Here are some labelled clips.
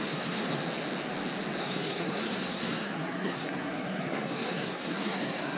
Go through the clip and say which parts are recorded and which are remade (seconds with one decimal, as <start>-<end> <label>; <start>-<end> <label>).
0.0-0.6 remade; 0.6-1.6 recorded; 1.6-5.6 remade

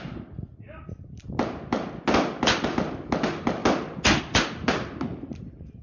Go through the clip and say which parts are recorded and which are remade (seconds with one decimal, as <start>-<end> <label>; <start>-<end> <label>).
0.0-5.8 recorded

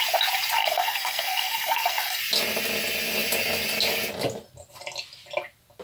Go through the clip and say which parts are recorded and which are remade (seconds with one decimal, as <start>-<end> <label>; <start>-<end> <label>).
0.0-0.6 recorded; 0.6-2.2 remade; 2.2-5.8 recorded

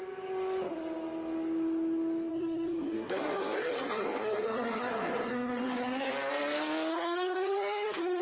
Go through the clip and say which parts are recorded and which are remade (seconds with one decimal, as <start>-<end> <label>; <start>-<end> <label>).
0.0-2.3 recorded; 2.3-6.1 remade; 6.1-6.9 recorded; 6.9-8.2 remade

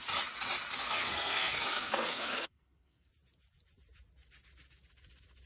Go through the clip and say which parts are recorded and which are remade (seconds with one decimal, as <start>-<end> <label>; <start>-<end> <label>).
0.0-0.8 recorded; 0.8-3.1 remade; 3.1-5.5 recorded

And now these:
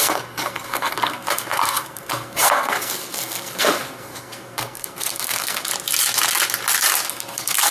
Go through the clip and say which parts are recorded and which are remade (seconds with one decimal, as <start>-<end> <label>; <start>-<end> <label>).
0.0-5.7 remade; 5.7-7.1 recorded; 7.1-7.7 remade